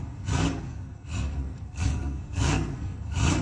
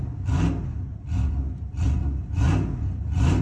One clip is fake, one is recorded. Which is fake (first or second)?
first